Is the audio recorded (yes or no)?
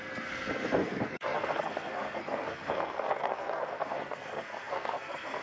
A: no